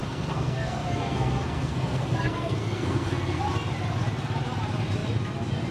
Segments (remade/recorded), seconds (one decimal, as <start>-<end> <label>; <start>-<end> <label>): 0.0-3.4 remade; 3.4-5.7 recorded

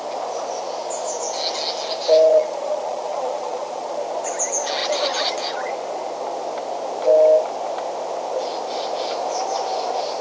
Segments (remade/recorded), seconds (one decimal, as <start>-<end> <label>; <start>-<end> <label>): 0.0-2.0 recorded; 2.0-4.0 remade; 4.0-4.8 recorded; 4.8-5.7 remade; 5.7-10.2 recorded

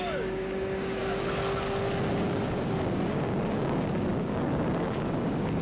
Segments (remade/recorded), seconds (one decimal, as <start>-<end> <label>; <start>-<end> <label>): 0.0-1.0 remade; 1.0-2.1 recorded; 2.1-5.6 remade

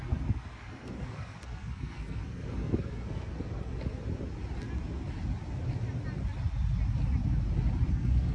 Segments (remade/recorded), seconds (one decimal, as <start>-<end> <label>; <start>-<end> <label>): 0.0-3.7 remade; 3.7-7.9 recorded; 7.9-8.3 remade

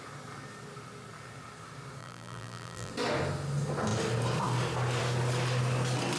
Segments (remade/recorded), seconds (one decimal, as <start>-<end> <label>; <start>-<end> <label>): 0.0-2.0 recorded; 2.0-2.9 remade; 2.9-6.2 recorded